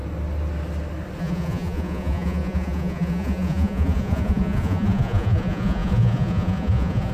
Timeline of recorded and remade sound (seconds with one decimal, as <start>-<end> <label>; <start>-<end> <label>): 0.0-1.2 recorded; 1.2-7.1 remade